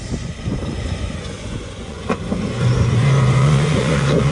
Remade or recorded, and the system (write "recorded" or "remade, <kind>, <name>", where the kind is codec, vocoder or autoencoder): remade, vocoder, Vocos